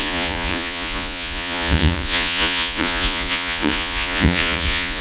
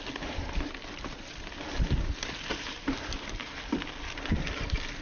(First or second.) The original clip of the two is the second